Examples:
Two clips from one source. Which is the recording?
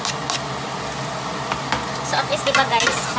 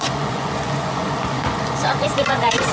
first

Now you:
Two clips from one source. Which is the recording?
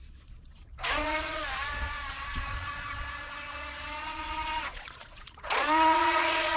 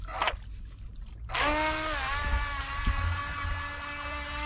second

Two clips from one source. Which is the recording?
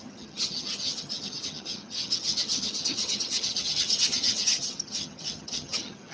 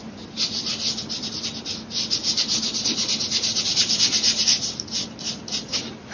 second